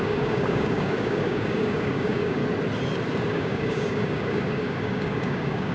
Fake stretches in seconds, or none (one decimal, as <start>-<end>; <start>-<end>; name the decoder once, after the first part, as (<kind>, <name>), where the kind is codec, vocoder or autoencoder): 0.0-2.4 (codec, DAC); 3.3-5.7